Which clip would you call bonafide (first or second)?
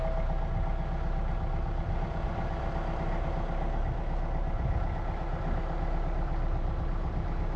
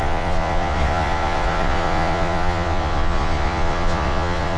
first